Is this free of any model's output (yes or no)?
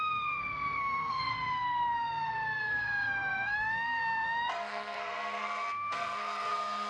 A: no